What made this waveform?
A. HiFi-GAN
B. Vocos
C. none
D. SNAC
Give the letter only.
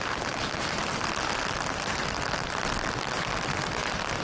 C